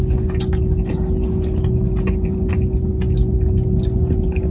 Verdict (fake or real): real